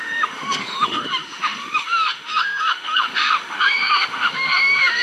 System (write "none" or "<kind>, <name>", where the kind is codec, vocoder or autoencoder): autoencoder, DAC-VAE